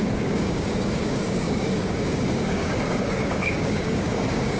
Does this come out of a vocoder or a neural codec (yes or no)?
yes